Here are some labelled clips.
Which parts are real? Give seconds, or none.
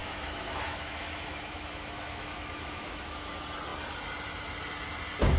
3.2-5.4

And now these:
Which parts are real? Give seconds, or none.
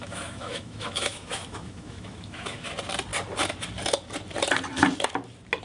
2.7-5.6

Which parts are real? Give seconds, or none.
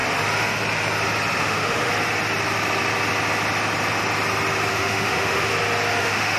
0.0-1.4; 1.9-4.7; 5.5-6.0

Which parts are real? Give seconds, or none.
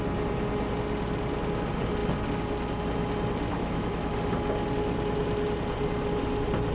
0.0-3.5; 4.0-6.7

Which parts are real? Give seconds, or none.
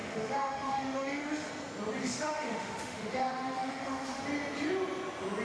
1.5-2.0; 4.2-5.4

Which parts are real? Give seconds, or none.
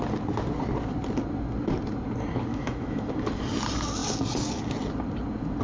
0.0-2.5; 3.1-5.6